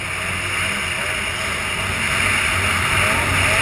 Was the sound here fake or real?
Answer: real